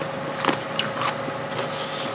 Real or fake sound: real